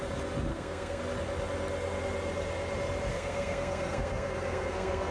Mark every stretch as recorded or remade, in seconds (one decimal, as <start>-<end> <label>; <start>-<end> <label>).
0.0-0.5 recorded; 0.5-1.0 remade; 1.0-3.1 recorded; 3.1-5.1 remade